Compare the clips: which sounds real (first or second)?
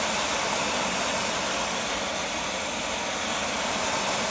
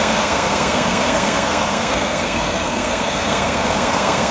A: first